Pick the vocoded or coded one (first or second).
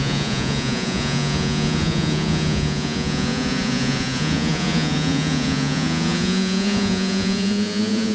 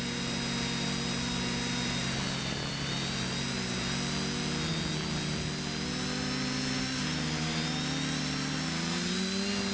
first